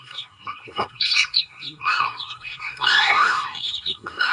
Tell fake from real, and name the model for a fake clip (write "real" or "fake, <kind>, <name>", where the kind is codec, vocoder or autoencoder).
fake, codec, SNAC